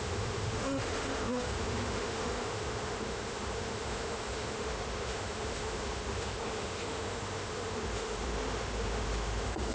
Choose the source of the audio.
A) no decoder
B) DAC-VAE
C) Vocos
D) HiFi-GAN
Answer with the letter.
B